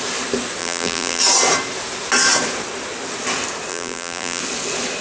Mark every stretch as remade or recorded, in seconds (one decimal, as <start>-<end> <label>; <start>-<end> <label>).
0.0-0.6 recorded; 0.6-1.2 remade; 1.2-3.7 recorded; 3.7-4.4 remade; 4.4-5.0 recorded